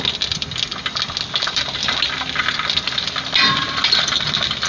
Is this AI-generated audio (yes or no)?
no